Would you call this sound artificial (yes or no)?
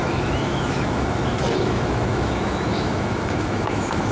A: yes